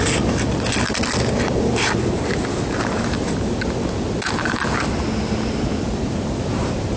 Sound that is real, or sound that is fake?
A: real